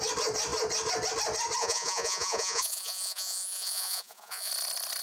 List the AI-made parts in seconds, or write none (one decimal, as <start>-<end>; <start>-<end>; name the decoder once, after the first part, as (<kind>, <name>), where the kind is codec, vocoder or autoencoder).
1.6-4.5 (vocoder, Vocos)